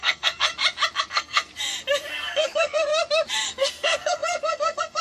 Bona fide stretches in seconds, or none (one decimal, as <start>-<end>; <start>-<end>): 0.5-1.1; 1.5-2.1; 2.9-3.5